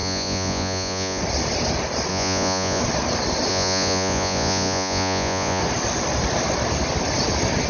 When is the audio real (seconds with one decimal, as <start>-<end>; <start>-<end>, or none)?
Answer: 1.2-2.1; 2.8-3.5; 5.6-7.7